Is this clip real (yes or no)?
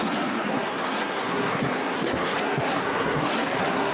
no